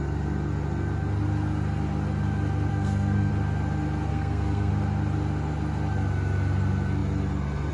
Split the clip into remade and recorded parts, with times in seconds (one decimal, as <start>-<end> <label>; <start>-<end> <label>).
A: 0.0-2.7 recorded; 2.7-3.3 remade; 3.3-4.1 recorded; 4.1-4.7 remade; 4.7-7.7 recorded